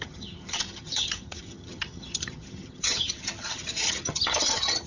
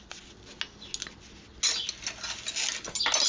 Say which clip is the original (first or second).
second